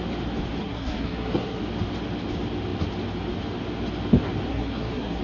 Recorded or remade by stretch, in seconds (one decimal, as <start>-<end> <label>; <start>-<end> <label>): 0.0-0.6 recorded; 0.6-1.6 remade; 1.6-4.5 recorded; 4.5-5.2 remade